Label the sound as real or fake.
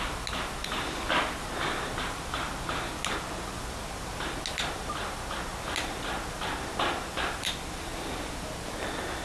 real